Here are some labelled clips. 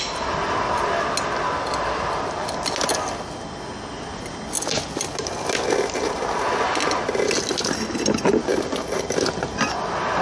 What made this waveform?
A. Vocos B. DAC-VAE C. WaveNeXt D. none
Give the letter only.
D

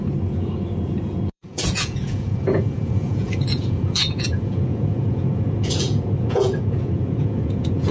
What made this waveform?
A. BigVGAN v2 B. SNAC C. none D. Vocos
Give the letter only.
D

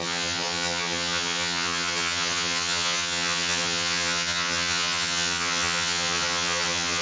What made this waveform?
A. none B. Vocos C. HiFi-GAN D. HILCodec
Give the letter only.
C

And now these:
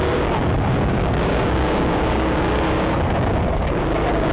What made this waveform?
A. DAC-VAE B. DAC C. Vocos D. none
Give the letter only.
B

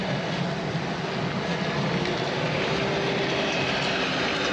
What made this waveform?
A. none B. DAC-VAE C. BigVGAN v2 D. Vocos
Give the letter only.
A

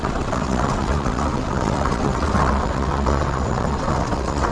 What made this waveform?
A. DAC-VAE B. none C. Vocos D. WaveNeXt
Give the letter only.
D